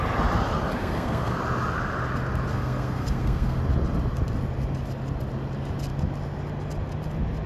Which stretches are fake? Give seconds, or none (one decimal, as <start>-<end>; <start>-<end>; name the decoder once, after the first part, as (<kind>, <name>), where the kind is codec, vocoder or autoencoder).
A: 0.8-1.4 (codec, SNAC); 2.5-3.6